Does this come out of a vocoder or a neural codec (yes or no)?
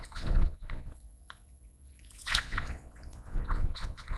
yes